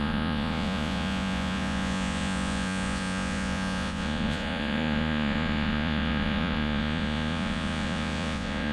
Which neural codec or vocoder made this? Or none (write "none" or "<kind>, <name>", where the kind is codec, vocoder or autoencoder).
vocoder, Vocos